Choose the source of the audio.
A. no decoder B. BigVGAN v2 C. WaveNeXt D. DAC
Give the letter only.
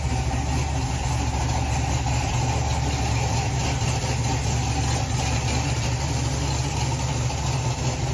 A